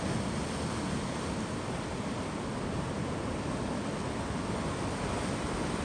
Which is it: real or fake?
real